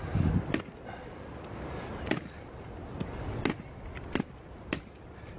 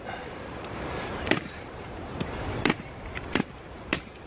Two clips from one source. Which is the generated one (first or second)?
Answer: second